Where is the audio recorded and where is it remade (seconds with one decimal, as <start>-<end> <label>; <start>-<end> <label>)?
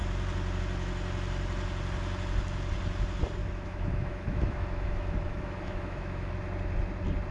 0.0-3.4 recorded; 3.4-6.3 remade; 6.3-7.3 recorded